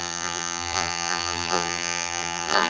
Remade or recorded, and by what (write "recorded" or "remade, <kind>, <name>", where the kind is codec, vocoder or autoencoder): remade, vocoder, BigVGAN v2